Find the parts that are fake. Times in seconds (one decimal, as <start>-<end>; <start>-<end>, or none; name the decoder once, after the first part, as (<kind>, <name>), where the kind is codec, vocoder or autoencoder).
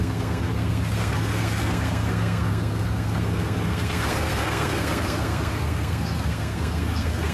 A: 0.0-7.3 (codec, SNAC)